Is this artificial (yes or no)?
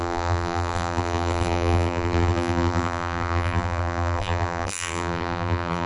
yes